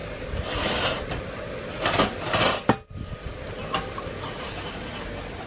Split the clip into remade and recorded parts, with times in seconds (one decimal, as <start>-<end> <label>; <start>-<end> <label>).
0.0-1.0 remade; 1.0-5.5 recorded